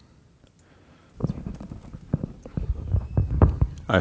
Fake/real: real